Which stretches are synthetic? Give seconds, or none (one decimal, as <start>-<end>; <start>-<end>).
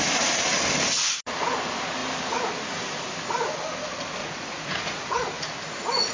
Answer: 4.2-6.1